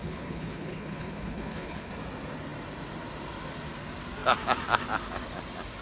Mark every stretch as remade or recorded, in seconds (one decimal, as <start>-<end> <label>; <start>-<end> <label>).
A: 0.0-1.9 remade; 1.9-5.8 recorded